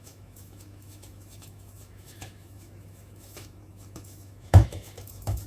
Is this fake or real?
fake